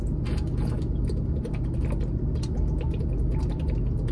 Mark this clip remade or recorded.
recorded